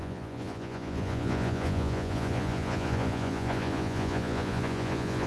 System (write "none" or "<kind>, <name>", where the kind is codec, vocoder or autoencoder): vocoder, Vocos